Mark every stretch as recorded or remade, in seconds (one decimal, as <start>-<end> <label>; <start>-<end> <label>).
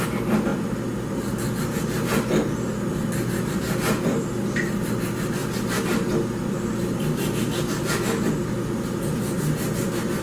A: 0.0-10.2 recorded